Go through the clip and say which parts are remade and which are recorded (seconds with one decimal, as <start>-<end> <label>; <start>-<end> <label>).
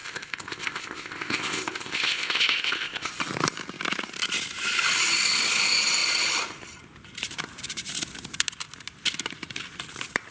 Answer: 0.0-3.1 remade; 3.1-10.3 recorded